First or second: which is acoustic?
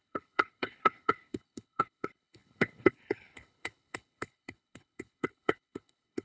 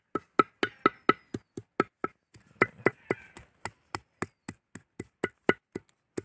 second